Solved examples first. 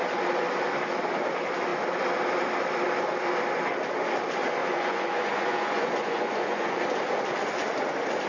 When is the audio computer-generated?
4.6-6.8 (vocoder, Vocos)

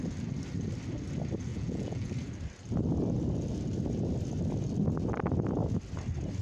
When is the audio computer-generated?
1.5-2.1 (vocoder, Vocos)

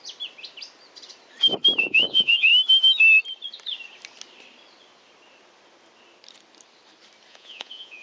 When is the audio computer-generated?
1.8-2.5 (vocoder, Vocos); 7.3-8.0

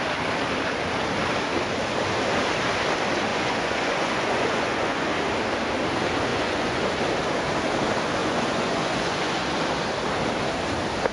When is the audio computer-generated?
3.3-5.1 (vocoder, Vocos); 6.3-6.8; 8.2-9.6

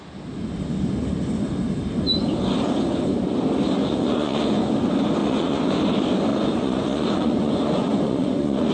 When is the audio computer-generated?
3.8-4.7 (vocoder, Vocos); 5.2-5.8; 6.3-8.7

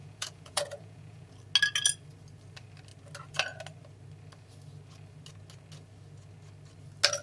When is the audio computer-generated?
0.0-1.3 (vocoder, Vocos)

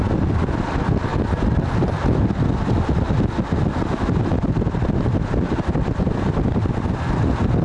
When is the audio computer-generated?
none